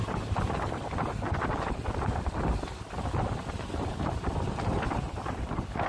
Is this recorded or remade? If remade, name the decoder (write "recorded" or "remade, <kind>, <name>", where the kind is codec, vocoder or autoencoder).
recorded